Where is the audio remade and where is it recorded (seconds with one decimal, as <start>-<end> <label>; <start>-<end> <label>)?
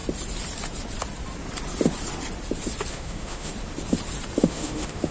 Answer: 0.0-2.9 recorded; 2.9-3.5 remade; 3.5-4.4 recorded; 4.4-5.1 remade